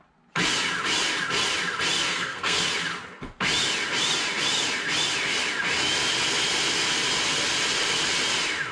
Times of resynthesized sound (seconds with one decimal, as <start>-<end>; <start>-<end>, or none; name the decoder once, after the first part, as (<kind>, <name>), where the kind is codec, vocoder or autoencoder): 2.1-2.6 (codec, SNAC)